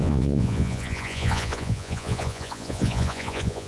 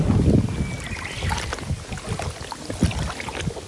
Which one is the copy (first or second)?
first